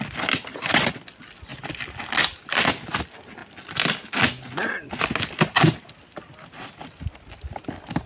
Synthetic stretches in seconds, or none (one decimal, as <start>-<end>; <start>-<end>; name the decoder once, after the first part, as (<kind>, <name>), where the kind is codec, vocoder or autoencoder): none

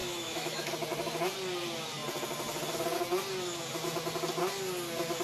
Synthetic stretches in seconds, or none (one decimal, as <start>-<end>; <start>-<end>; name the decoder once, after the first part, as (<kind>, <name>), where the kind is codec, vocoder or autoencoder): 0.0-0.7 (autoencoder, DAC-VAE)

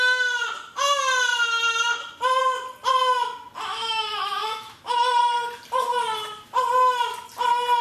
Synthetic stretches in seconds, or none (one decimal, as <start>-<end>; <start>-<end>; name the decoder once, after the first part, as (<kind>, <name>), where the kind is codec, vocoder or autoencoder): 3.7-5.2 (autoencoder, DAC-VAE)

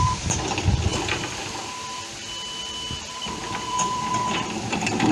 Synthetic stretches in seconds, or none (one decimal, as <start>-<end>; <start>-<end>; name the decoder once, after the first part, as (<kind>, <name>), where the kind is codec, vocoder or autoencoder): 0.0-0.9 (vocoder, BigVGAN v2); 2.6-5.1

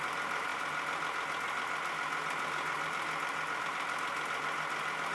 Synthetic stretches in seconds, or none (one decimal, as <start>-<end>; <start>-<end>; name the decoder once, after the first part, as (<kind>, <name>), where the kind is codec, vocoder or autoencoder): none